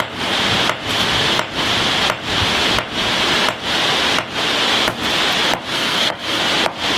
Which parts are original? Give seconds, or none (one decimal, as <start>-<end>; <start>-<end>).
0.0-5.7; 6.4-7.0